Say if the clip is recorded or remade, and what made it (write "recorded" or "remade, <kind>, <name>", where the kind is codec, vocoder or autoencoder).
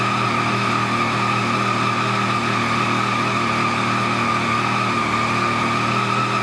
recorded